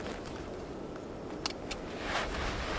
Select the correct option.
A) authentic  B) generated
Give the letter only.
A